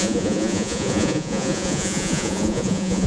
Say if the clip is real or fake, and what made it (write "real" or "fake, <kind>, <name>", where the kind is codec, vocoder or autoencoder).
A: fake, vocoder, Vocos